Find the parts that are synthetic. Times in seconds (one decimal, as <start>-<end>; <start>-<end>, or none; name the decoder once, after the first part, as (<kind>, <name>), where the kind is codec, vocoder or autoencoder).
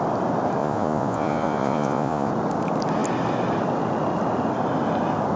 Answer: 0.6-2.3 (vocoder, Vocos)